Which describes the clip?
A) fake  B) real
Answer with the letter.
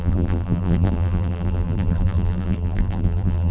A